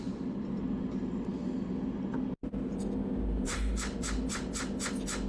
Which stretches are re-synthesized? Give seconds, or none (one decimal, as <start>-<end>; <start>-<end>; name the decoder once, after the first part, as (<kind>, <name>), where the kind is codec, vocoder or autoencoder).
none